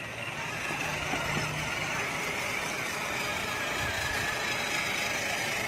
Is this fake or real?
fake